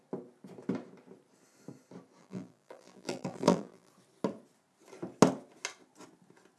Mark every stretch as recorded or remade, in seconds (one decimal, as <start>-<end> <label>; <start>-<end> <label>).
0.0-2.2 recorded; 2.2-3.9 remade; 3.9-6.6 recorded